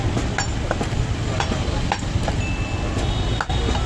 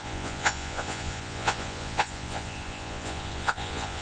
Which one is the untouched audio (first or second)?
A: first